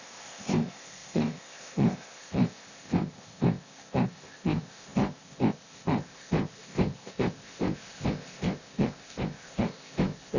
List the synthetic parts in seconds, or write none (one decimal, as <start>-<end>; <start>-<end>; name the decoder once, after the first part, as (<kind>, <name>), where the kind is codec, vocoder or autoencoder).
0.0-10.4 (codec, ZipCodec)